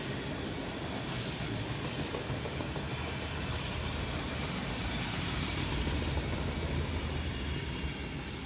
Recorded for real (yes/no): yes